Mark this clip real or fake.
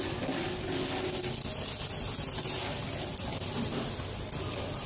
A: real